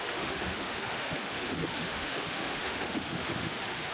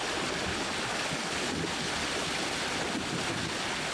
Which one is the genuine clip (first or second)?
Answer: second